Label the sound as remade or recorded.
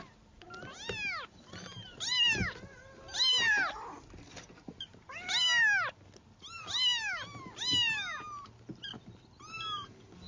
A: recorded